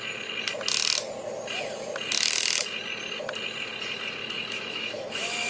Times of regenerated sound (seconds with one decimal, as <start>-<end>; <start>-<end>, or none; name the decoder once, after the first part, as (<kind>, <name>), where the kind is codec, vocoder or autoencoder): 4.2-5.5 (autoencoder, DAC-VAE)

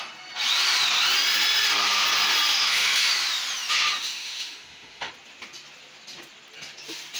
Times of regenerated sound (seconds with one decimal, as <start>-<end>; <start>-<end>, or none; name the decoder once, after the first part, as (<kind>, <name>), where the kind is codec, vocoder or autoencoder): 2.5-3.1 (autoencoder, DAC-VAE); 4.0-5.1

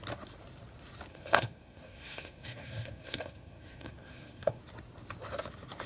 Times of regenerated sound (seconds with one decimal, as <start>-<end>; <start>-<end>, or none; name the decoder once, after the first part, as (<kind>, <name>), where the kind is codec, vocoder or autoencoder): 1.1-4.6 (codec, SNAC)